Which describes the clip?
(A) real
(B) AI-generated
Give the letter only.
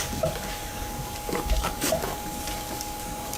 B